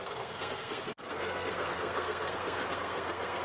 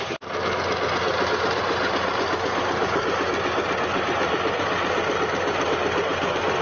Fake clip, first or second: first